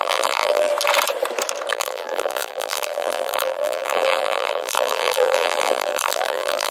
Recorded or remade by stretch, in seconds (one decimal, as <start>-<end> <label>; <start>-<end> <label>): 0.0-0.7 remade; 0.7-1.7 recorded; 1.7-6.7 remade